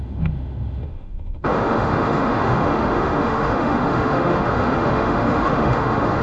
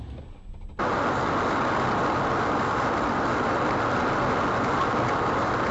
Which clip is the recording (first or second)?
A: second